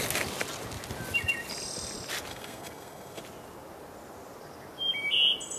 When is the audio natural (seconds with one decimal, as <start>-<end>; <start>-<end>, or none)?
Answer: 0.0-2.3; 3.2-5.6

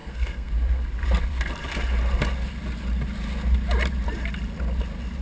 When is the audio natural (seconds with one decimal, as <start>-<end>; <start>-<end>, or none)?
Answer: 0.5-5.2

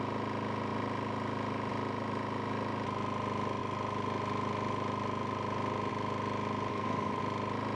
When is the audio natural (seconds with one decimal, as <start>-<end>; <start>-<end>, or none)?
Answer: 0.0-6.7; 7.2-7.8

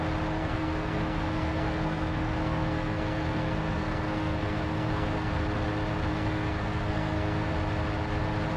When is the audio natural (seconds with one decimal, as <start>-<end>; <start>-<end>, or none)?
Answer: 0.0-0.4; 5.3-6.1; 7.5-8.6

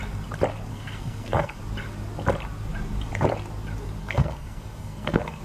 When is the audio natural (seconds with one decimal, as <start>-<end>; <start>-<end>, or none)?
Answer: 0.0-0.7; 1.6-4.0